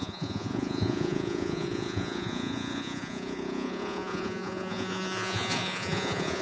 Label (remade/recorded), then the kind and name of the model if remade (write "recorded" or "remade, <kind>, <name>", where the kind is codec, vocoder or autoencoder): remade, vocoder, Vocos